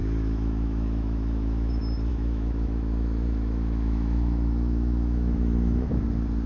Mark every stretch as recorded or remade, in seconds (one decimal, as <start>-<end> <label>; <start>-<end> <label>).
0.0-1.7 remade; 1.7-2.1 recorded; 2.1-6.0 remade; 6.0-6.5 recorded